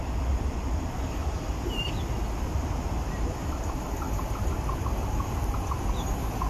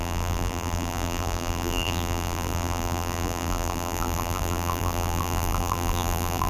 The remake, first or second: second